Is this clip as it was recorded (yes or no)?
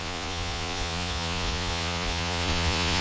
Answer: no